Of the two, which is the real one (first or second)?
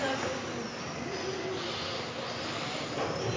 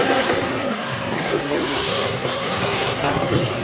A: first